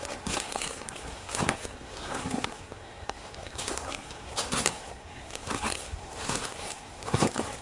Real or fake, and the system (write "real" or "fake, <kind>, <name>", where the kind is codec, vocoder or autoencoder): fake, codec, SNAC